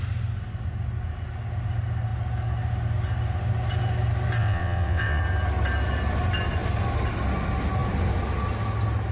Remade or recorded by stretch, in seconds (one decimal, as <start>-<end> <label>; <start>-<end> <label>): 0.0-4.4 recorded; 4.4-5.2 remade; 5.2-9.1 recorded